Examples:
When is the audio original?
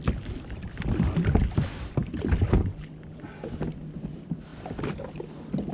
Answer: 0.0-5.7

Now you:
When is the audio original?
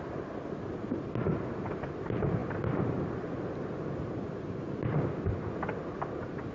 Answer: 0.0-6.5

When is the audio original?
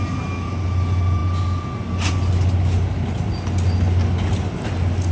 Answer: 0.0-5.1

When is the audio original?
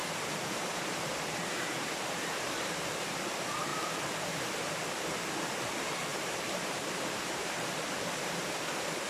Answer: 2.8-3.7; 4.7-6.1; 8.6-9.1